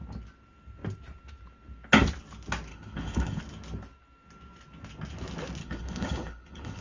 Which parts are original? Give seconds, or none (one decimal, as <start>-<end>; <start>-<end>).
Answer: 0.0-2.7; 3.4-5.6